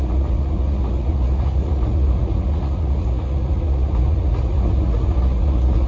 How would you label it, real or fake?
fake